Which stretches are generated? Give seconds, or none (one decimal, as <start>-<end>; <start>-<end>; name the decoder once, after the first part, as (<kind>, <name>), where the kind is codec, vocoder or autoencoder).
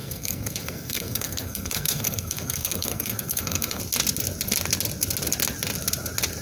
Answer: 0.0-3.8 (codec, SNAC)